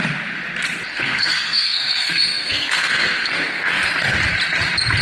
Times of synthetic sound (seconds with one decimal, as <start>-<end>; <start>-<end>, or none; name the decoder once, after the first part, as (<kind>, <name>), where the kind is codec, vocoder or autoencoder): 0.9-3.9 (codec, SNAC)